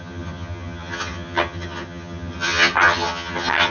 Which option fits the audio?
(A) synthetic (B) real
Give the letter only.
A